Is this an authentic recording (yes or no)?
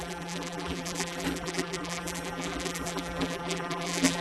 no